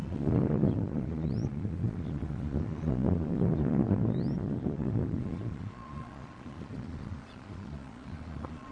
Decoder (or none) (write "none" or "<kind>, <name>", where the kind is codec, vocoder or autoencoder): vocoder, Vocos